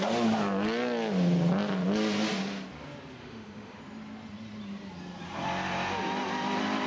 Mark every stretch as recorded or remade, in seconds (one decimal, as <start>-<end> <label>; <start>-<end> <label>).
0.0-3.2 recorded; 3.2-3.8 remade; 3.8-6.9 recorded